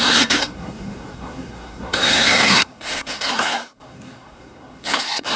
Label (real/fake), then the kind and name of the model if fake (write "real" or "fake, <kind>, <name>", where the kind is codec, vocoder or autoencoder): fake, codec, SNAC